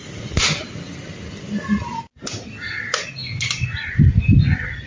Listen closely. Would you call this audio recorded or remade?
recorded